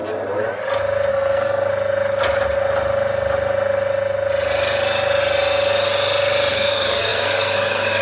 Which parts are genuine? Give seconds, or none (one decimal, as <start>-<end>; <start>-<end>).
0.0-1.1; 1.7-6.5